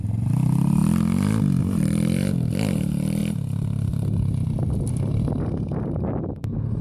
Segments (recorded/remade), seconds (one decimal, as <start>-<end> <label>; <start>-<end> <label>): 0.0-6.8 recorded